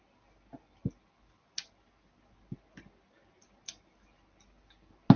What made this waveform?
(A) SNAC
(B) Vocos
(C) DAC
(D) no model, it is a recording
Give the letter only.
D